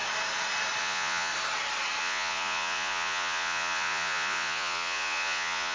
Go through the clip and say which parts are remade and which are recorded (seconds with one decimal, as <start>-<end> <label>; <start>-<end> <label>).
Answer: 0.0-0.8 recorded; 0.8-1.3 remade; 1.3-2.0 recorded; 2.0-5.7 remade